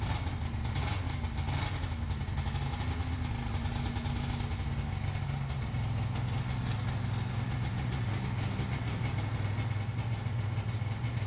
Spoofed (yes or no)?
no